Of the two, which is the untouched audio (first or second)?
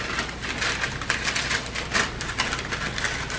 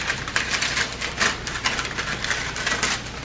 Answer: first